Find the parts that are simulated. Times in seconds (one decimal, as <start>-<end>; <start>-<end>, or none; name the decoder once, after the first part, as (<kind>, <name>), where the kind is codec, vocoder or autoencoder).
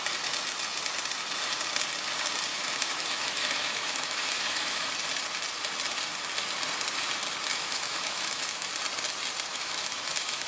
2.5-4.9 (autoencoder, DAC-VAE); 7.5-8.7; 9.5-10.5